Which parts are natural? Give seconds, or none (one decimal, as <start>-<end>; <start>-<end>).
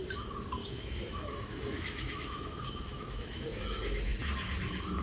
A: 0.0-0.6; 3.6-5.0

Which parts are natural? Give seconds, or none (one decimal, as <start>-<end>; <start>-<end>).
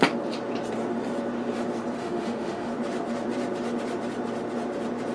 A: 0.0-2.0; 2.7-5.1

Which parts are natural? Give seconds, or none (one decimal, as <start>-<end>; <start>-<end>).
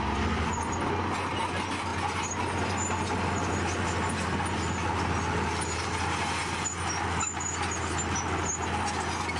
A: 0.0-9.4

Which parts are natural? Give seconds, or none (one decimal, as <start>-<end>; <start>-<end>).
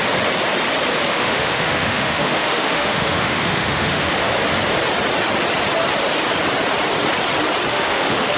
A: 0.0-1.1; 4.1-7.7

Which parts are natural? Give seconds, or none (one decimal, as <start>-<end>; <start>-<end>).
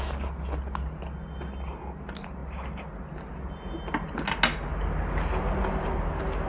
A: 0.0-6.5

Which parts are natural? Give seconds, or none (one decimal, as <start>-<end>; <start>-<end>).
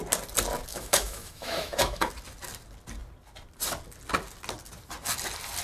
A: 0.0-0.7; 2.1-5.6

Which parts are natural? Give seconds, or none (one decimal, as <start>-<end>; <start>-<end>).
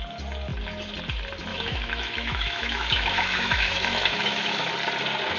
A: 0.0-1.5; 4.7-5.4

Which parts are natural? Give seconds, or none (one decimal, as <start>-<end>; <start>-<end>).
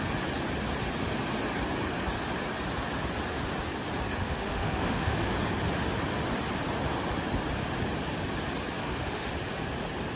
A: 0.0-4.2; 5.3-8.8; 9.3-10.2